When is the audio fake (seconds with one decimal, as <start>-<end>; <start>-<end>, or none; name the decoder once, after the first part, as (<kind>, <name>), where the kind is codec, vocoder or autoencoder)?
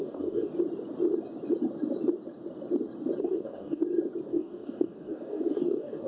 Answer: 0.0-0.5 (codec, DAC); 3.2-3.8; 4.3-6.1